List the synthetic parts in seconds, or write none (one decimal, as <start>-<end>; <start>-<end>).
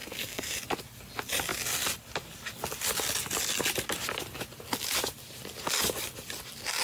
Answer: 0.0-0.6